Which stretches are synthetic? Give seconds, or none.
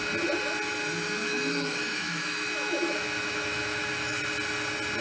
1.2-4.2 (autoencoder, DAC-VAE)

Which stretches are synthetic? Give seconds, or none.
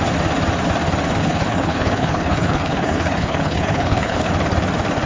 1.2-4.3 (codec, HILCodec)